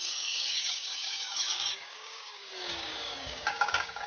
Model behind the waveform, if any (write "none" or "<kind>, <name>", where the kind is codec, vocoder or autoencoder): codec, DAC